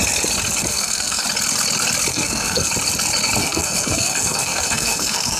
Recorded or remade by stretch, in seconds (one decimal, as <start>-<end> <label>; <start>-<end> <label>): 0.0-0.6 recorded; 0.6-1.2 remade; 1.2-2.1 recorded; 2.1-2.7 remade; 2.7-3.4 recorded; 3.4-5.4 remade